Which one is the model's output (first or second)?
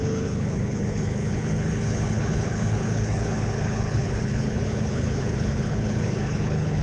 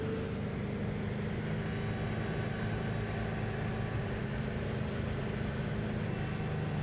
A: first